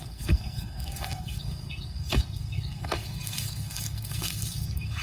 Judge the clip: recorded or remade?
remade